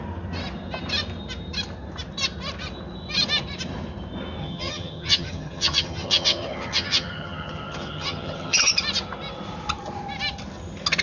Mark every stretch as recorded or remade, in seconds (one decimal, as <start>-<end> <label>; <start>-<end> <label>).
0.0-4.4 recorded; 4.4-8.7 remade; 8.7-11.0 recorded